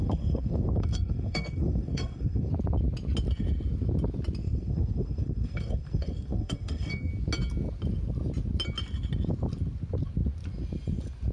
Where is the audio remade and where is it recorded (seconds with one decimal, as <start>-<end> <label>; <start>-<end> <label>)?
0.0-2.5 remade; 2.5-4.4 recorded; 4.4-7.1 remade; 7.1-11.3 recorded

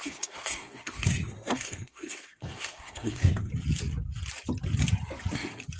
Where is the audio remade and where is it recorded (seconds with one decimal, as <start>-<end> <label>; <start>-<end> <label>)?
0.0-3.5 remade; 3.5-5.8 recorded

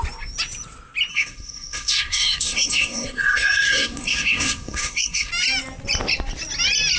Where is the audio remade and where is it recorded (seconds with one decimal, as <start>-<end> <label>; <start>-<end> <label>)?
0.0-1.1 recorded; 1.1-5.3 remade; 5.3-7.0 recorded

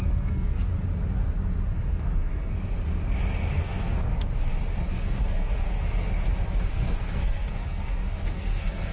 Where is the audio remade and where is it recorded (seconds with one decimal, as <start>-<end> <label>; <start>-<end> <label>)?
0.0-0.7 remade; 0.7-1.7 recorded; 1.7-2.5 remade; 2.5-3.5 recorded; 3.5-4.1 remade; 4.1-4.9 recorded; 4.9-6.1 remade; 6.1-6.7 recorded; 6.7-8.9 remade

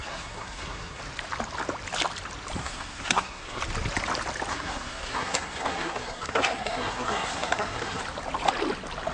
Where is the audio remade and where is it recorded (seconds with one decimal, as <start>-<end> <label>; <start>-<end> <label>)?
0.0-1.0 remade; 1.0-2.6 recorded; 2.6-3.6 remade; 3.6-4.5 recorded; 4.5-8.0 remade; 8.0-9.1 recorded

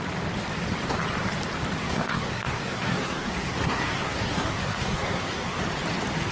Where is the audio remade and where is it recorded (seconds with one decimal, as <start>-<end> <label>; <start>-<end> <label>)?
0.0-1.8 recorded; 1.8-5.6 remade; 5.6-6.3 recorded